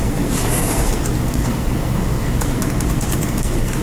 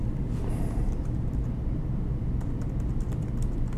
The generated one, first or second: first